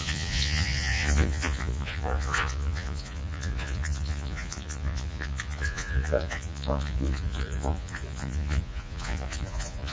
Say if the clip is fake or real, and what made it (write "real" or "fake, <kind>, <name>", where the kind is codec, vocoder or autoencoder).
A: fake, vocoder, Vocos